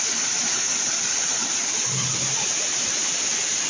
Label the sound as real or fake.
fake